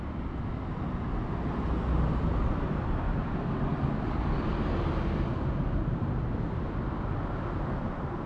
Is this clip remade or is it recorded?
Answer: recorded